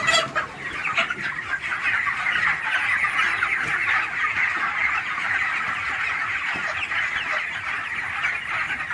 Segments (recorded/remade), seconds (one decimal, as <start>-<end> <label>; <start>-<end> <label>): 0.0-8.9 recorded